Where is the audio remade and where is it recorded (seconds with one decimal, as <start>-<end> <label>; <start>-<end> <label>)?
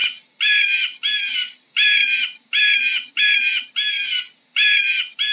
0.0-5.3 recorded